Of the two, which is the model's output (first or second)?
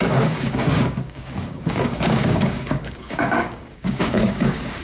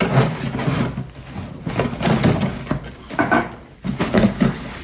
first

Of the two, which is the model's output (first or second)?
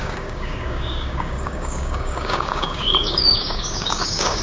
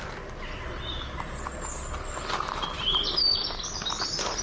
first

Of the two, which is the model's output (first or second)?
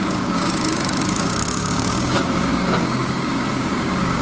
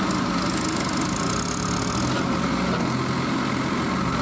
first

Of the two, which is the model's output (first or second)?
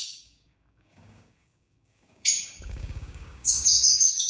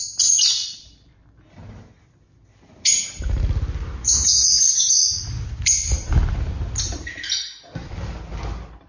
first